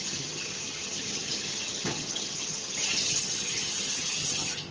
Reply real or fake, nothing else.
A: fake